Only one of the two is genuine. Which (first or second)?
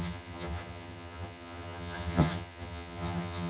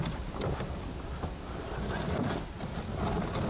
second